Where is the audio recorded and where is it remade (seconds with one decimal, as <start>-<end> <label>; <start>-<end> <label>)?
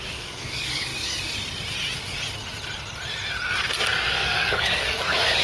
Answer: 0.0-0.9 remade; 0.9-4.1 recorded; 4.1-5.4 remade